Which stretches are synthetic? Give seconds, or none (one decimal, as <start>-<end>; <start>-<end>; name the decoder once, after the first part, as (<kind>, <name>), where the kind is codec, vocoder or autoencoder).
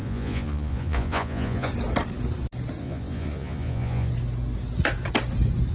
0.0-1.7 (vocoder, Vocos); 2.8-4.1